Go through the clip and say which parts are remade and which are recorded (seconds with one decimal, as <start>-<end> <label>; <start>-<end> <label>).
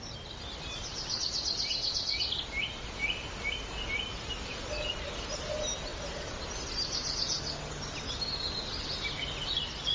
0.0-9.9 recorded